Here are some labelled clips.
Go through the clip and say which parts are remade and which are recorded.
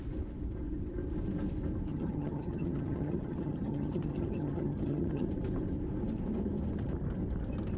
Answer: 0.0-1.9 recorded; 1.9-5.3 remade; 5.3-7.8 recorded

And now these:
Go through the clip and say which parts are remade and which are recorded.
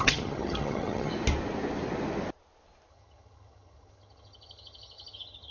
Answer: 0.0-1.1 remade; 1.1-2.9 recorded; 2.9-5.5 remade